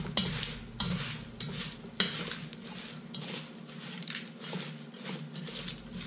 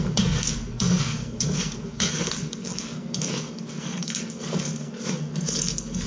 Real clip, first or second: first